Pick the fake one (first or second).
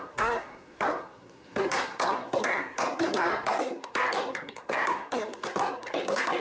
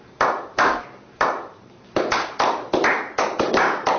first